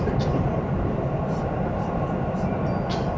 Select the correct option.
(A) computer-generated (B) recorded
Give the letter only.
A